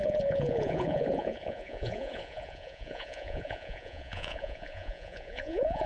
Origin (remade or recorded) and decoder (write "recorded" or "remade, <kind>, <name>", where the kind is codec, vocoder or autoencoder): remade, vocoder, Vocos